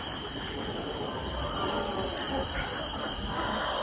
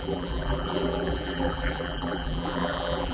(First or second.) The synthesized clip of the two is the second